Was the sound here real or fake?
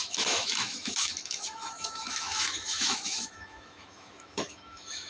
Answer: fake